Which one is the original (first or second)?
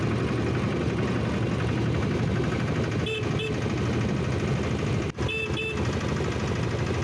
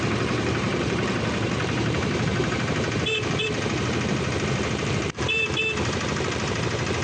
first